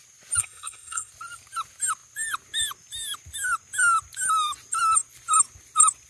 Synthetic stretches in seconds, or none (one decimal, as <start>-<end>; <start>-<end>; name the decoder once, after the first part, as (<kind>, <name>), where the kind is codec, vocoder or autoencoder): 0.4-1.1 (codec, SNAC)